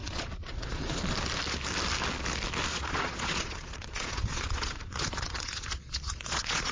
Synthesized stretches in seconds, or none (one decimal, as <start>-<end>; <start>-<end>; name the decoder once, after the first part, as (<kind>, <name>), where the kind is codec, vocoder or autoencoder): 0.0-1.0 (vocoder, Vocos); 2.7-6.7